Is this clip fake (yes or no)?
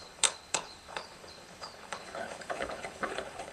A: yes